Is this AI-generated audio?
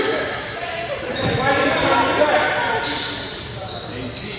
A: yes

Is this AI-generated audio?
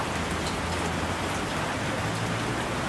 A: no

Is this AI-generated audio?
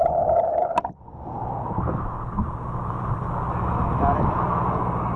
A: no